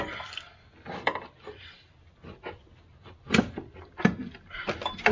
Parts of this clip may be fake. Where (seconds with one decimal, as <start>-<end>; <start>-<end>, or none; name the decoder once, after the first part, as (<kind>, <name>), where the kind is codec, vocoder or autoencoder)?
none